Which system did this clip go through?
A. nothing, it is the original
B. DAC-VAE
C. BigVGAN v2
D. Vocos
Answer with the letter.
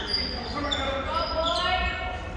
A